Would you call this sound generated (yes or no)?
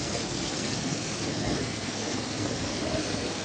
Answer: yes